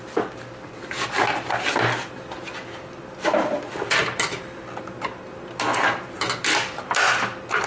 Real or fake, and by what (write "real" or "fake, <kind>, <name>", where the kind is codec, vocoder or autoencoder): real